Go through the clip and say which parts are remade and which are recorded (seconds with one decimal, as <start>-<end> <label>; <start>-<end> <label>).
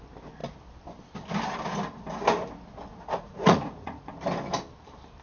0.0-2.9 recorded; 2.9-4.1 remade; 4.1-5.2 recorded